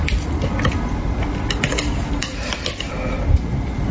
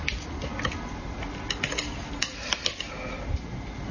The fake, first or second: first